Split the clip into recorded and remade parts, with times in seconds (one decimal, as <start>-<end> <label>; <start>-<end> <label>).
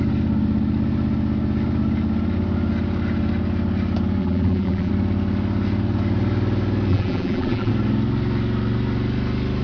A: 0.0-4.2 recorded; 4.2-4.9 remade; 4.9-6.9 recorded; 6.9-7.7 remade; 7.7-9.6 recorded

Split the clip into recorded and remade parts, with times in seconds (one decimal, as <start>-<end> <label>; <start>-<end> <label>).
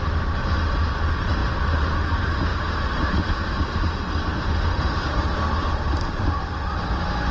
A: 0.0-7.3 recorded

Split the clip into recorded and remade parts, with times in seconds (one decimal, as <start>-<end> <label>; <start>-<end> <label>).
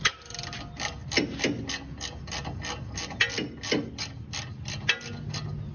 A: 0.0-5.7 recorded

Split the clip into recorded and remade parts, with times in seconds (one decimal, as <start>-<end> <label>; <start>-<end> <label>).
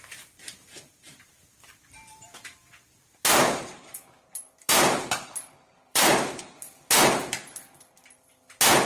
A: 0.0-6.1 remade; 6.1-8.9 recorded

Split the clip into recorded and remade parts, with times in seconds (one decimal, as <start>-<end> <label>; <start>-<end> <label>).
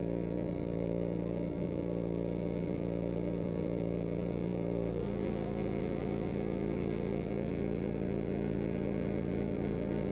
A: 0.0-10.1 remade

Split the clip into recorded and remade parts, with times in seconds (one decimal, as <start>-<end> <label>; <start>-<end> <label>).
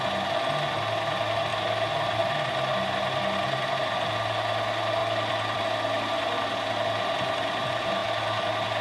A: 0.0-5.0 recorded; 5.0-5.6 remade; 5.6-8.8 recorded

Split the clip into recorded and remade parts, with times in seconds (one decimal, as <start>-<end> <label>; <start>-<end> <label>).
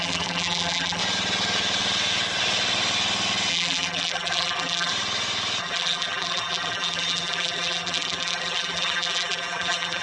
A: 0.0-1.0 remade; 1.0-3.5 recorded; 3.5-4.9 remade; 4.9-5.6 recorded; 5.6-10.0 remade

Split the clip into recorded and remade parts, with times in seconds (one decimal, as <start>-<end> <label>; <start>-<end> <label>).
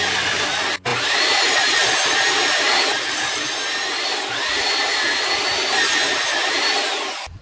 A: 0.0-0.9 recorded; 0.9-5.3 remade; 5.3-7.4 recorded